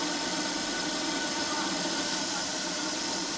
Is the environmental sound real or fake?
fake